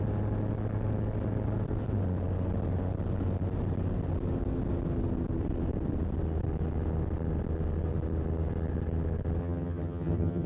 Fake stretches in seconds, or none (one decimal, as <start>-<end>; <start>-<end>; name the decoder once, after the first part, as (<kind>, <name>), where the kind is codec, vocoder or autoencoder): 9.4-10.5 (vocoder, HiFi-GAN)